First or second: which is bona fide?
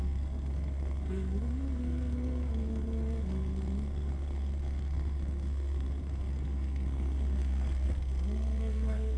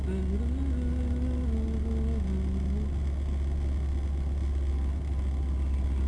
second